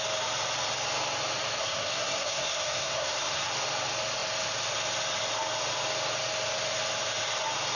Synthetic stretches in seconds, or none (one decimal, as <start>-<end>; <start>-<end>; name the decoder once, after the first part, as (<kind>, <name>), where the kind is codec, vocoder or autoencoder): 1.6-3.5 (codec, SNAC)